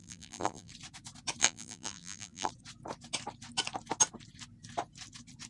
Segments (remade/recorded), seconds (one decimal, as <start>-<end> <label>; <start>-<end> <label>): 0.0-0.7 remade; 0.7-1.4 recorded; 1.4-2.5 remade; 2.5-5.5 recorded